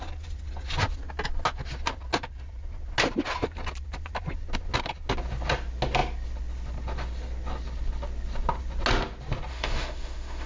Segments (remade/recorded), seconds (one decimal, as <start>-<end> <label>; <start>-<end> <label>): 0.0-9.5 recorded; 9.5-10.5 remade